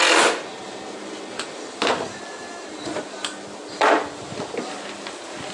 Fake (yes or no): no